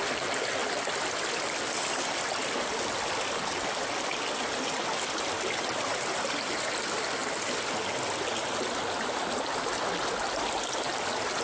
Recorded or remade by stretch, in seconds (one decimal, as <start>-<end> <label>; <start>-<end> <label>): 0.0-11.4 recorded